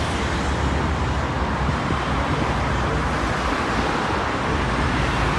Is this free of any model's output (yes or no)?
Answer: yes